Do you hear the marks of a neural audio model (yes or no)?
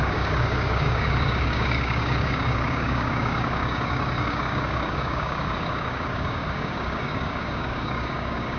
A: yes